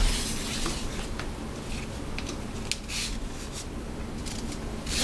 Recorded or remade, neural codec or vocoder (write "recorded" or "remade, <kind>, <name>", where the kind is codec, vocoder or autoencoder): recorded